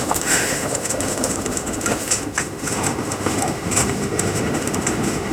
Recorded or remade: remade